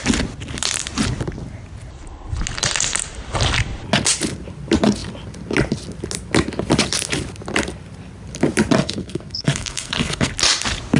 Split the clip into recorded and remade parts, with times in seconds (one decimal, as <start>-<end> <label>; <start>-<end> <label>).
0.0-8.8 recorded; 8.8-10.3 remade; 10.3-11.0 recorded